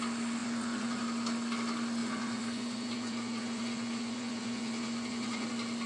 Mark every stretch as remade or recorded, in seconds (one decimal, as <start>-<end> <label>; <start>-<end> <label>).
0.0-0.4 recorded; 0.4-1.0 remade; 1.0-2.0 recorded; 2.0-5.5 remade; 5.5-5.9 recorded